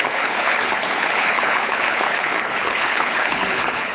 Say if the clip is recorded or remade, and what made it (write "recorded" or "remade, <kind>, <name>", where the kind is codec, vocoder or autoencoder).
remade, codec, HILCodec